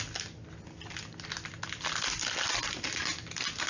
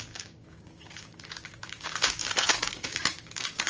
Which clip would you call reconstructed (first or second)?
second